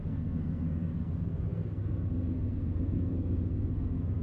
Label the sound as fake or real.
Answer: fake